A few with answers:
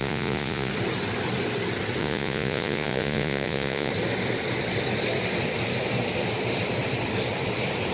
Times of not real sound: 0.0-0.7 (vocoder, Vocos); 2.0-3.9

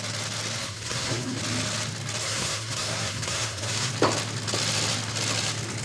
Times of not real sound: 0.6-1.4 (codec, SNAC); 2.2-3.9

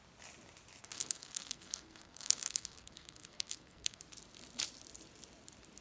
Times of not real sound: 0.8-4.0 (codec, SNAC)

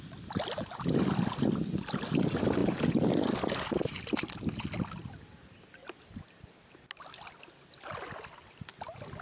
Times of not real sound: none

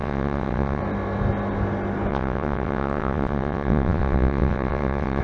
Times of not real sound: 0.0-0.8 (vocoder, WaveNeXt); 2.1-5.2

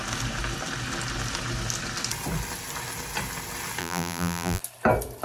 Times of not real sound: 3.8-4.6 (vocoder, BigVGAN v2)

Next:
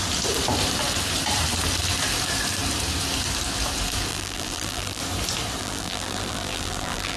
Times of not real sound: 4.1-5.0 (vocoder, BigVGAN v2); 5.6-7.2